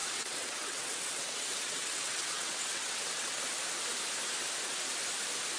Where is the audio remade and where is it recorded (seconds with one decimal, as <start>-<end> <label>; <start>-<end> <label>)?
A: 0.0-3.4 remade; 3.4-5.6 recorded